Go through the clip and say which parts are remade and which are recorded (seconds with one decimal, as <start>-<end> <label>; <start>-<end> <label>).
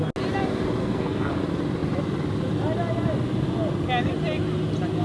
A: 0.0-0.8 recorded; 0.8-1.4 remade; 1.4-5.0 recorded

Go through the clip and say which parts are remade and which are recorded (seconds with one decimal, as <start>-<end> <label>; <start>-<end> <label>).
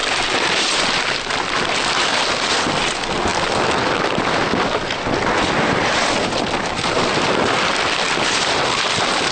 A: 0.0-9.3 recorded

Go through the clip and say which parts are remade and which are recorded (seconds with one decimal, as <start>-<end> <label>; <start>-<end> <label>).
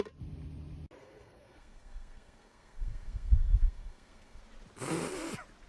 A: 0.0-1.0 recorded; 1.0-4.4 remade; 4.4-5.7 recorded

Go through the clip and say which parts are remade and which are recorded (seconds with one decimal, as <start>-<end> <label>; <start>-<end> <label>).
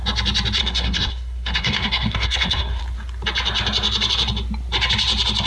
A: 0.0-0.6 recorded; 0.6-2.8 remade; 2.8-5.5 recorded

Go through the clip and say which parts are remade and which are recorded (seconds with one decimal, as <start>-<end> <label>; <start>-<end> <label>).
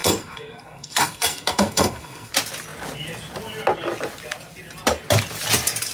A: 0.0-2.3 remade; 2.3-5.9 recorded